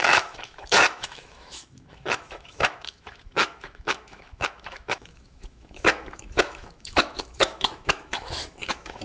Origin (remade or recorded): remade